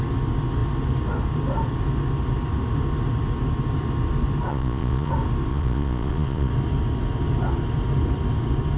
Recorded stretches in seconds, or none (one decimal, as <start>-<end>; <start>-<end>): 0.0-4.5; 5.1-5.5; 6.5-8.8